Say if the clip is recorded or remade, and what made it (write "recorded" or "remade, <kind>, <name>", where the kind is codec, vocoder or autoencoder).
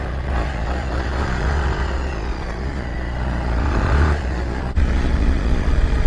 remade, vocoder, Vocos